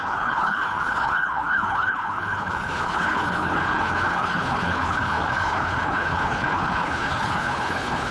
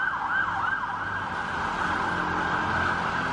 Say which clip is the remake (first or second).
first